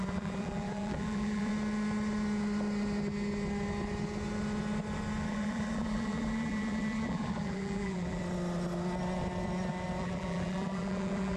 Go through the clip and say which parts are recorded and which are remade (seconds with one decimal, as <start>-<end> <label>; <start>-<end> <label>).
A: 0.0-1.5 remade; 1.5-5.2 recorded; 5.2-8.2 remade; 8.2-10.0 recorded; 10.0-11.4 remade